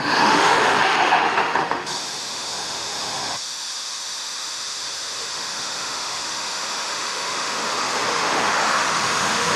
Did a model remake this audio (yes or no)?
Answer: yes